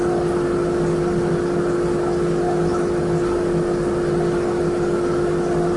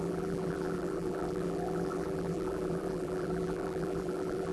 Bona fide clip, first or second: first